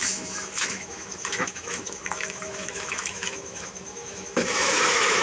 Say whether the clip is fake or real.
fake